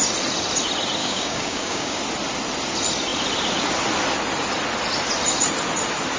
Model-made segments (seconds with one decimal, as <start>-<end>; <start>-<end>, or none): 1.0-2.0